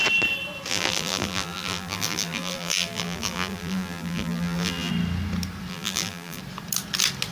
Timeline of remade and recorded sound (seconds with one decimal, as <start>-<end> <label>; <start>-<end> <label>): 0.0-0.7 recorded; 0.7-4.9 remade; 4.9-5.7 recorded; 5.7-6.4 remade; 6.4-7.3 recorded